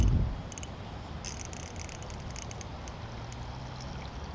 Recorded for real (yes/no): yes